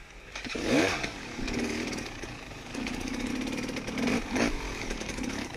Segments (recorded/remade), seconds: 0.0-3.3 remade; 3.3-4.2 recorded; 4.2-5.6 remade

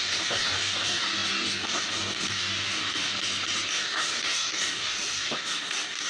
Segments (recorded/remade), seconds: 0.0-3.1 remade; 3.1-3.7 recorded; 3.7-6.1 remade

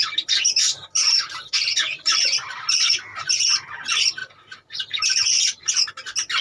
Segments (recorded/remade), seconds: 0.0-3.5 remade; 3.5-4.2 recorded; 4.2-5.7 remade; 5.7-6.4 recorded

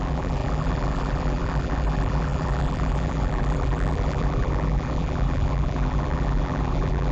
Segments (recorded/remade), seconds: 0.0-7.1 remade

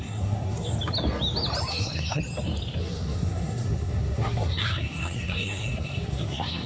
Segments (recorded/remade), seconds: 0.0-0.7 remade; 0.7-1.7 recorded; 1.7-2.2 remade; 2.2-2.8 recorded; 2.8-6.7 remade

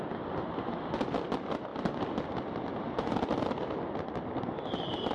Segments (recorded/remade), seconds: 0.0-5.1 recorded

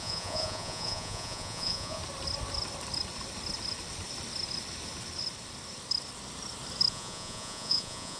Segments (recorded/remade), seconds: 0.0-2.0 remade; 2.0-6.9 recorded; 6.9-8.2 remade

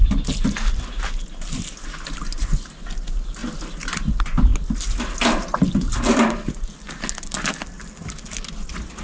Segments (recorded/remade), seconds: 0.0-9.0 recorded